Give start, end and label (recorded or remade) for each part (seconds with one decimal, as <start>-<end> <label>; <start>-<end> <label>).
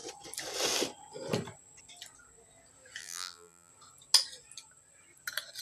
0.0-3.0 recorded; 3.0-3.7 remade; 3.7-5.6 recorded